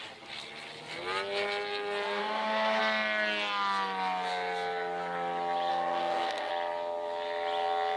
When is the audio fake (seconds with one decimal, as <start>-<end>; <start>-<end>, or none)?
2.2-2.8; 5.7-6.5